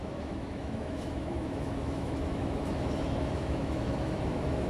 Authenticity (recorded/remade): remade